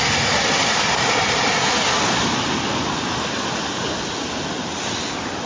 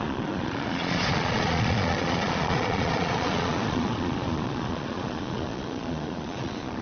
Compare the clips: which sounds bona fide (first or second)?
first